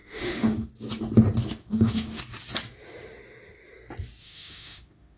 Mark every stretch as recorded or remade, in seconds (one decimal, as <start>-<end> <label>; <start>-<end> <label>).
0.0-0.7 remade; 0.7-1.6 recorded; 1.6-2.2 remade; 2.2-4.2 recorded; 4.2-5.2 remade